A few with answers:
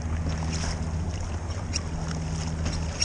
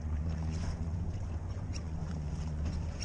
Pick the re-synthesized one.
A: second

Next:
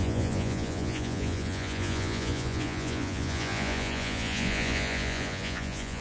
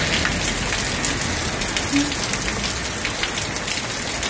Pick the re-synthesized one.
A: first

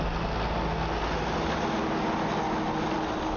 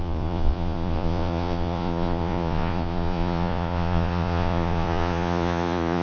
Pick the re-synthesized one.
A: second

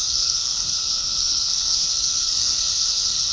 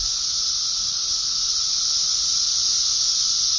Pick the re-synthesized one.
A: first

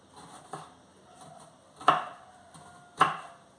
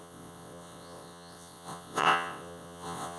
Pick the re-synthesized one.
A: second